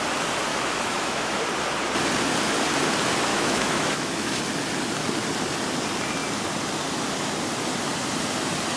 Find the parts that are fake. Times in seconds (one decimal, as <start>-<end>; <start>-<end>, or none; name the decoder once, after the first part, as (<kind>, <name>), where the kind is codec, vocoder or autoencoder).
0.5-1.4 (autoencoder, DAC-VAE); 3.3-4.4